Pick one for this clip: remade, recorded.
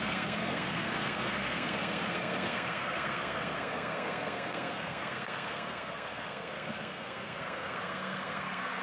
remade